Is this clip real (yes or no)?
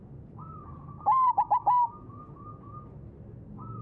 yes